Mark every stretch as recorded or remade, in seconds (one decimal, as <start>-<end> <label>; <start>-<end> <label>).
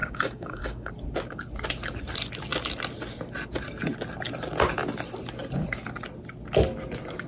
0.0-0.9 remade; 0.9-7.3 recorded